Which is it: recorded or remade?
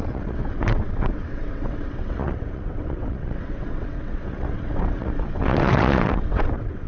remade